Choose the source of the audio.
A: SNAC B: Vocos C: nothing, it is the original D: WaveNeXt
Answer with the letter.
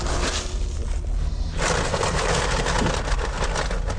C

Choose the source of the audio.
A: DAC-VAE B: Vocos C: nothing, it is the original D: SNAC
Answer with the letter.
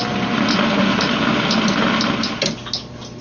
C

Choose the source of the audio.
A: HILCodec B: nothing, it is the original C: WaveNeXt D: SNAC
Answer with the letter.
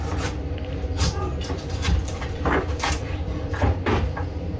B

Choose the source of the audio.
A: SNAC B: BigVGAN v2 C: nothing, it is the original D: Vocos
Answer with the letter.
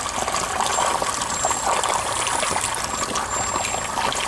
C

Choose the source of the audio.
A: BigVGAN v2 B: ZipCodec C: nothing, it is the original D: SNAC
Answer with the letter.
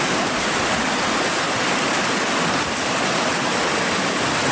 C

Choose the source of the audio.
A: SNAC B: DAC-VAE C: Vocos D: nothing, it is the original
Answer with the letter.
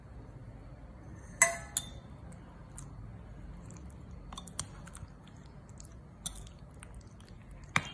D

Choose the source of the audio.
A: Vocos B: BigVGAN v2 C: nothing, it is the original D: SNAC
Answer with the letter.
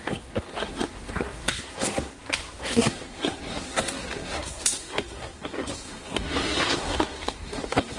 D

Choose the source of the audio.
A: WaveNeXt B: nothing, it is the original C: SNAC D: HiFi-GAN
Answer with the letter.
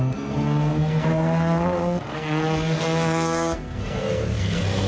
C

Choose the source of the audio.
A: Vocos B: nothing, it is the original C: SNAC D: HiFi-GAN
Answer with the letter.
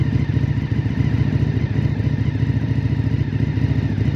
B